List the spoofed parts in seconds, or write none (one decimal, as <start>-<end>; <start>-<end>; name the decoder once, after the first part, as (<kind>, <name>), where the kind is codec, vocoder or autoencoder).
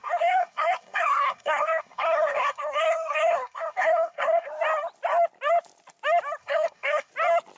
0.0-4.5 (codec, SNAC); 6.4-7.1